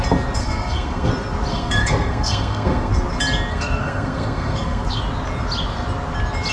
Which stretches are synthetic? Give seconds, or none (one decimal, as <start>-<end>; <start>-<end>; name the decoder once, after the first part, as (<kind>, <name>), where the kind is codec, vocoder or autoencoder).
0.4-1.1 (codec, SNAC); 1.5-2.9; 3.5-5.0